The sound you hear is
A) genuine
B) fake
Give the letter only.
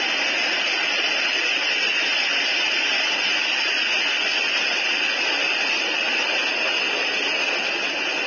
A